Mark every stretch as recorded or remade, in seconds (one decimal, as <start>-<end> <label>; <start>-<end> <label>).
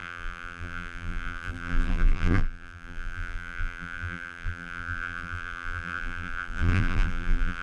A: 0.0-7.6 remade